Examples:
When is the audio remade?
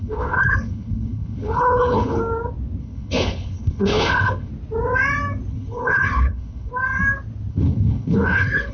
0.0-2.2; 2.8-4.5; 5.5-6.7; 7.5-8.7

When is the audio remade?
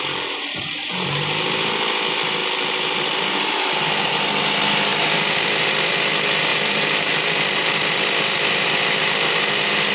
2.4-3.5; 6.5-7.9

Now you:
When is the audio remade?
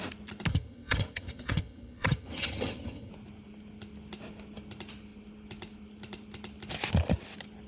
0.5-3.1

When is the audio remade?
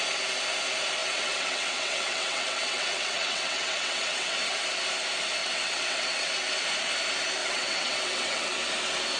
1.0-4.6; 5.4-6.3; 7.4-8.6